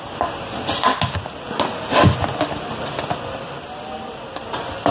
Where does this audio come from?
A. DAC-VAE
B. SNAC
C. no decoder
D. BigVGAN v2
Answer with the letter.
C